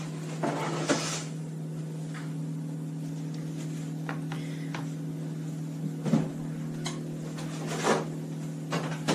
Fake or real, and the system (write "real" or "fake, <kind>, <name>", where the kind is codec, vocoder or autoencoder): real